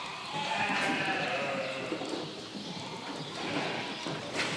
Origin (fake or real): fake